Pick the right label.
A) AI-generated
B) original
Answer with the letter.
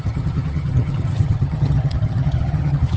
A